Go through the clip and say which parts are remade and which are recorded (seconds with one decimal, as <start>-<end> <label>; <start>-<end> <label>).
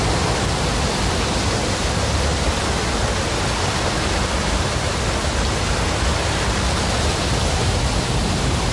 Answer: 0.0-8.7 recorded